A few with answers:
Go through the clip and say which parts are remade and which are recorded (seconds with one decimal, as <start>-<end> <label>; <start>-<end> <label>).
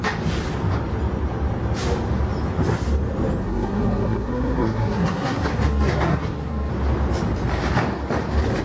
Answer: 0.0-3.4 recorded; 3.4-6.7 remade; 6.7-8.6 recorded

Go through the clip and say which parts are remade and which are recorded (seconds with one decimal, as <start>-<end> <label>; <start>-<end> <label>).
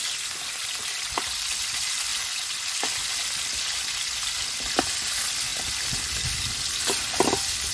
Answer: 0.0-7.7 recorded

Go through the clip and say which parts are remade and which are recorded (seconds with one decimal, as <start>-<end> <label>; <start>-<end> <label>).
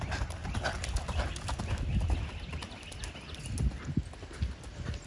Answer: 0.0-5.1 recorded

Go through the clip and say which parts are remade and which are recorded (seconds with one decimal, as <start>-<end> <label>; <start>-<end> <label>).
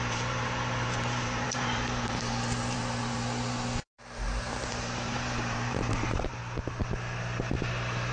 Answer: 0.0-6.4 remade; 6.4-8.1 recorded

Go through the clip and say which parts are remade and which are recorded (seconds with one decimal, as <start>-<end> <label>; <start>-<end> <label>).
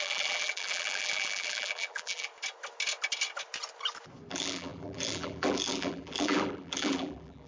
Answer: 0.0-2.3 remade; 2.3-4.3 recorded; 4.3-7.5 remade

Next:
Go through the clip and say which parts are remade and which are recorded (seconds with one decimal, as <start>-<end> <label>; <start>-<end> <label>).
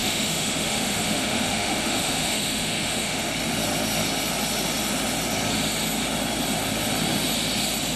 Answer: 0.0-3.3 remade; 3.3-8.0 recorded